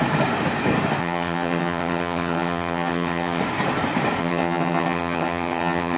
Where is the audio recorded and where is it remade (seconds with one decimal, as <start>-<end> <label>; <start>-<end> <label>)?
0.0-1.0 recorded; 1.0-3.4 remade; 3.4-4.2 recorded; 4.2-6.0 remade